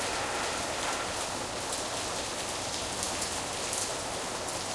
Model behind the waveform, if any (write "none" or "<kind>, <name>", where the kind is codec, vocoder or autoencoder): none